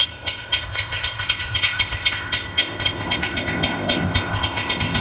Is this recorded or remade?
remade